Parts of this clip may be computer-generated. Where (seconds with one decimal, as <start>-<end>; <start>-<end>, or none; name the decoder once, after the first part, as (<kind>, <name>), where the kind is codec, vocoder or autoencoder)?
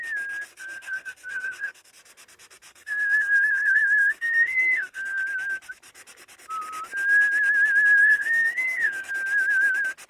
0.5-1.9 (codec, SNAC); 2.7-5.2; 8.0-9.1